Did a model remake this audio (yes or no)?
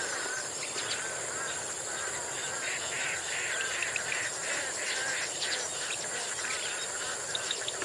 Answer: yes